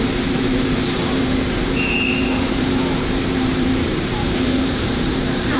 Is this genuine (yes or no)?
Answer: no